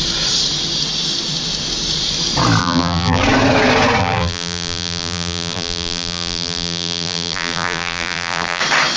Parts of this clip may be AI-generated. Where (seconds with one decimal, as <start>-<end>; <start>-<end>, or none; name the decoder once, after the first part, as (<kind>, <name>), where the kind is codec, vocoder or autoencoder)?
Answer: 2.6-3.2 (vocoder, BigVGAN v2); 4.0-8.6